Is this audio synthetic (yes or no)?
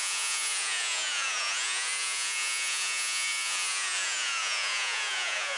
yes